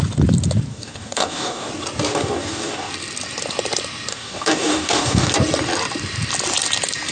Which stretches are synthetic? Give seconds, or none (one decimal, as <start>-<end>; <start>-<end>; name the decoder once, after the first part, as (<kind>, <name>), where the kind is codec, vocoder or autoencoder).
0.7-1.7 (codec, DAC); 2.1-2.9; 4.1-5.3